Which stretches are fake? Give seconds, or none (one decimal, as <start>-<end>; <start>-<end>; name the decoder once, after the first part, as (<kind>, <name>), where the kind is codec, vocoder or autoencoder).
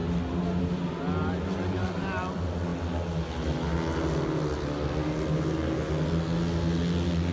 none